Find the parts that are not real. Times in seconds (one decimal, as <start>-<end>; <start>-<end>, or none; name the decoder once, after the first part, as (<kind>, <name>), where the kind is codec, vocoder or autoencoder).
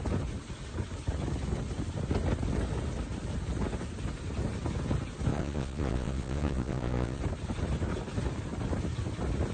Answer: 5.3-7.2 (vocoder, Vocos)